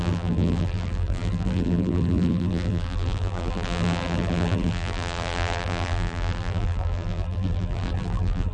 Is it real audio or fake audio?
fake